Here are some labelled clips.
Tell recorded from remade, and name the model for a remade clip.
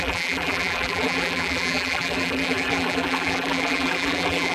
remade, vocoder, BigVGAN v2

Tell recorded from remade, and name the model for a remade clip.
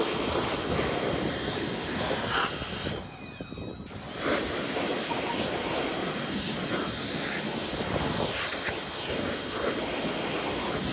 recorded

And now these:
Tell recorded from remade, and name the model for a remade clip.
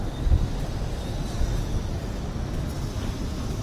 recorded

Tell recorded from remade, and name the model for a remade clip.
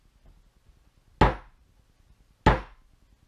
recorded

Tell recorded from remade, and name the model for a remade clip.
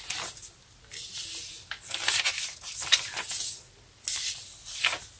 recorded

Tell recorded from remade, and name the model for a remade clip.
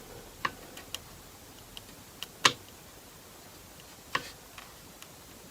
recorded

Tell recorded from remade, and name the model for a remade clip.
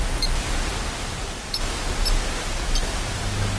recorded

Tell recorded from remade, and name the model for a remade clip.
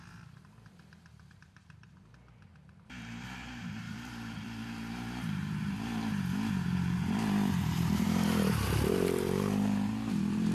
remade, vocoder, BigVGAN v2